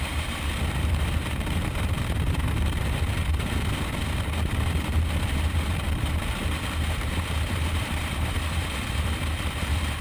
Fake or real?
fake